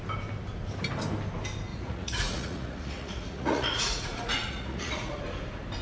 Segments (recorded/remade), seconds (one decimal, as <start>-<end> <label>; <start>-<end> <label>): 0.0-1.7 recorded; 1.7-5.2 remade; 5.2-5.8 recorded